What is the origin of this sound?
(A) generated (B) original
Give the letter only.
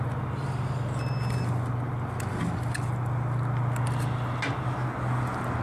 B